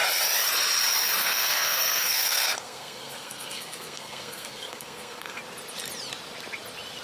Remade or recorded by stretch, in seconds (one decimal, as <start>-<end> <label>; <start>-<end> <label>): 0.0-1.2 recorded; 1.2-5.4 remade; 5.4-7.0 recorded